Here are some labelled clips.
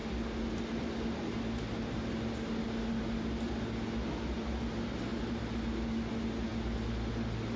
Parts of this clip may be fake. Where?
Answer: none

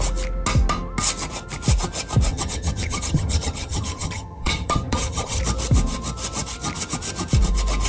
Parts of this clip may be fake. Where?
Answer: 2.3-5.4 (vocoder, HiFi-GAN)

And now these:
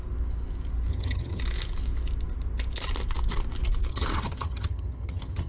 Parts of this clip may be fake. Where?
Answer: 0.9-1.4 (vocoder, HiFi-GAN); 3.9-5.5

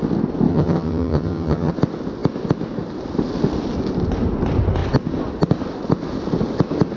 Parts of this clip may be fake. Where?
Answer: 0.5-1.7 (vocoder, HiFi-GAN)